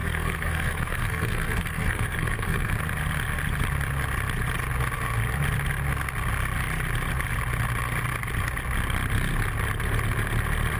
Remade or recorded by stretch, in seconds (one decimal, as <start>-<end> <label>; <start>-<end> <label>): 0.0-2.7 remade; 2.7-10.8 recorded